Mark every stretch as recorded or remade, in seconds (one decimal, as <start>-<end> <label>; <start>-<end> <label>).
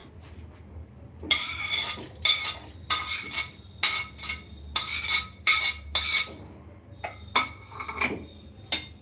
0.0-9.0 recorded